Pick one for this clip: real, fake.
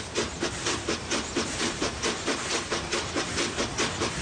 real